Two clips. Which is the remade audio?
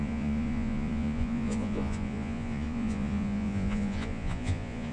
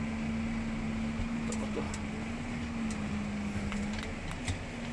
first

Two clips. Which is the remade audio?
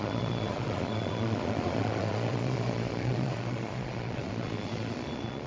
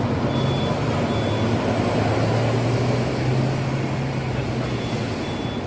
first